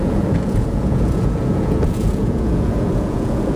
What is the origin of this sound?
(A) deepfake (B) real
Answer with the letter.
A